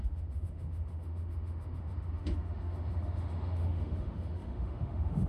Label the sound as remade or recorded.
remade